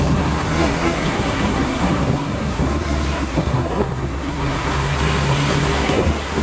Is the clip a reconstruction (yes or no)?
yes